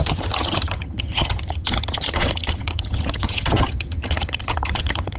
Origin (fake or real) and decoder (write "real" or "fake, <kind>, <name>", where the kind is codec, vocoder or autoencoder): fake, vocoder, HiFi-GAN